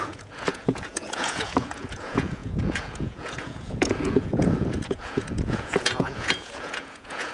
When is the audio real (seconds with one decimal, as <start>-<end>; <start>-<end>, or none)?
none